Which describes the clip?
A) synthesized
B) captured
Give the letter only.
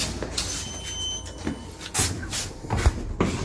B